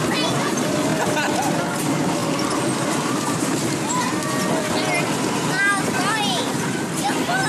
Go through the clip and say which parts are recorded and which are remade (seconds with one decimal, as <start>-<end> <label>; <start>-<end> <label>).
0.0-7.5 recorded